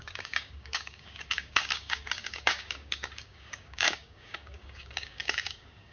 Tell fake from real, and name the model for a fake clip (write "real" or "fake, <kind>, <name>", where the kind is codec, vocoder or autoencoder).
fake, codec, DAC